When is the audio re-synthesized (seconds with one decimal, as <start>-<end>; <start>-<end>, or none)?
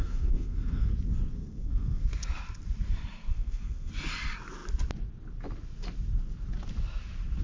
0.0-0.9; 1.4-2.0; 3.3-3.9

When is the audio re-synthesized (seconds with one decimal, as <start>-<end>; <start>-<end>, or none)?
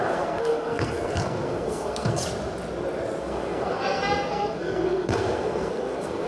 0.0-2.2; 3.2-6.3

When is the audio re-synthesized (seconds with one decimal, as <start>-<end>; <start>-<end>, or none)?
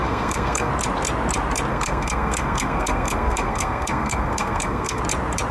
0.0-0.7; 1.7-5.0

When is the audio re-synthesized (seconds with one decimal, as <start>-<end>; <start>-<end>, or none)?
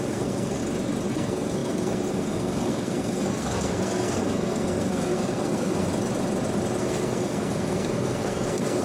0.0-0.6; 1.1-5.9; 6.8-8.8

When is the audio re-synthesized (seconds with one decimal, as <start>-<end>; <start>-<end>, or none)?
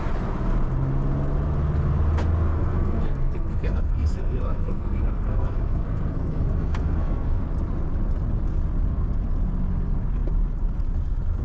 2.5-7.4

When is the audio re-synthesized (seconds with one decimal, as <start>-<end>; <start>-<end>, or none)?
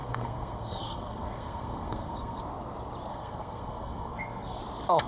0.0-2.4; 3.1-4.6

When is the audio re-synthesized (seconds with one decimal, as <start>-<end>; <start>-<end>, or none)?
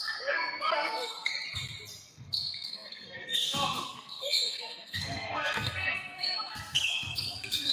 0.0-1.3; 2.1-7.7